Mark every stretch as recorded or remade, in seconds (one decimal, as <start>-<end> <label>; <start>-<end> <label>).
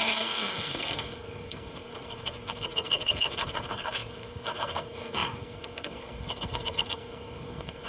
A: 0.0-7.9 remade